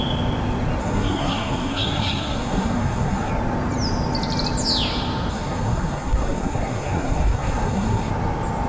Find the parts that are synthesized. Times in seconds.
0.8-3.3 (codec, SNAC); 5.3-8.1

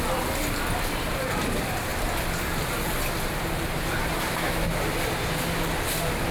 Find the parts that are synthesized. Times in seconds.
none

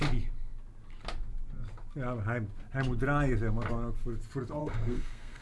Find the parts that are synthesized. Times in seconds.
4.6-5.4 (codec, SNAC)

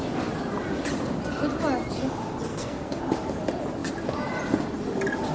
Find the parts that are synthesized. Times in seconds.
2.5-3.0 (codec, SNAC)